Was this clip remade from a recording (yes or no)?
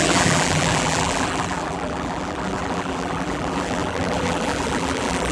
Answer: yes